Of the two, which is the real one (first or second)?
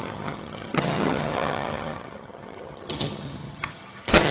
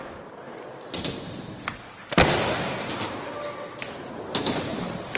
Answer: second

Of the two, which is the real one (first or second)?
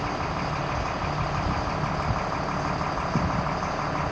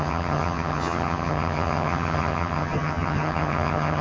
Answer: first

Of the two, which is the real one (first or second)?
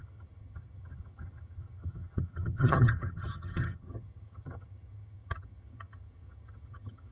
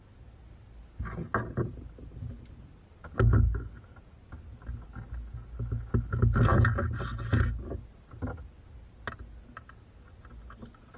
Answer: second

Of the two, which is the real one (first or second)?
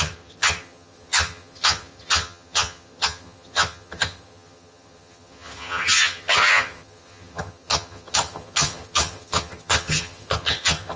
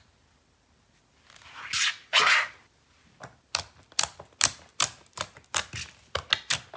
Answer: second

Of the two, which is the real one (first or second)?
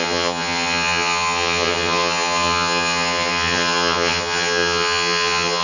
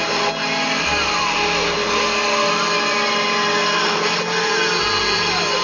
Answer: second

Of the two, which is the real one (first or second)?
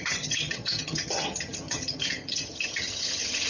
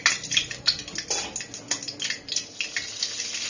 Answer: second